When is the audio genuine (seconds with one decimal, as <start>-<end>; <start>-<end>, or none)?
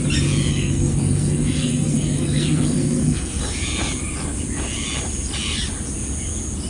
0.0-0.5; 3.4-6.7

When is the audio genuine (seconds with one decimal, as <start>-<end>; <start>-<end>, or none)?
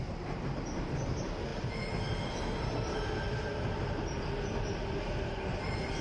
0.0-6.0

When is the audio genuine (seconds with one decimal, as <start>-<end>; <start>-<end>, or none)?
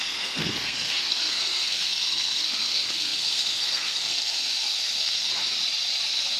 5.3-6.4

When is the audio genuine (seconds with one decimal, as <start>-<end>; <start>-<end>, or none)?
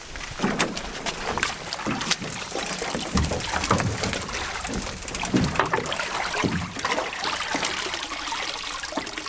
0.0-6.4; 7.0-9.3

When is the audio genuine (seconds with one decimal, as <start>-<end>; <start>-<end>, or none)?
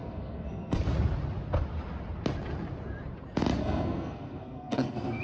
0.8-3.6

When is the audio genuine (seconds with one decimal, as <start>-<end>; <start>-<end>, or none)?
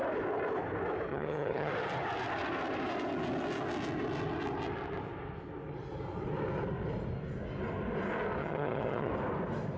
0.0-1.1; 1.7-8.4; 9.1-9.8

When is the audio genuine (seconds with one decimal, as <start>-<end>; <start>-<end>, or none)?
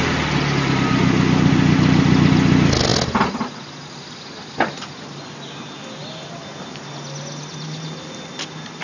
0.0-8.8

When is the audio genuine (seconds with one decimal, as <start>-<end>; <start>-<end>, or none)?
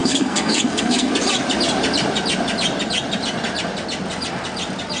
1.1-5.0